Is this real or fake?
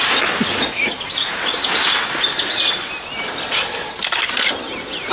real